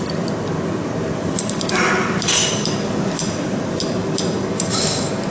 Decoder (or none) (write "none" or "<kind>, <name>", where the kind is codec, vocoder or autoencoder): vocoder, BigVGAN v2